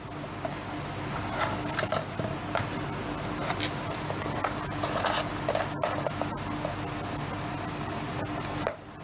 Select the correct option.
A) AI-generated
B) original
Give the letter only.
B